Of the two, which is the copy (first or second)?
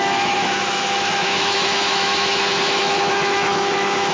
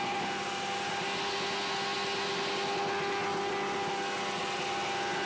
first